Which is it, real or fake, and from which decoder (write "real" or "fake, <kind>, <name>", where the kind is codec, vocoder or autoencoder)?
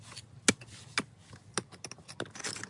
real